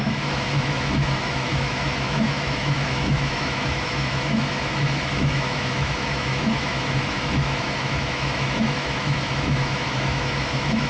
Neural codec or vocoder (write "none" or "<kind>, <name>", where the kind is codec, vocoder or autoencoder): autoencoder, DAC-VAE